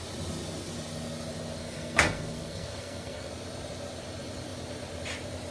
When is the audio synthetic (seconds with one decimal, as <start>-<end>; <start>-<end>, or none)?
1.6-3.3